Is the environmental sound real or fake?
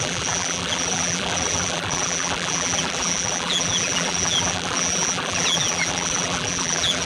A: fake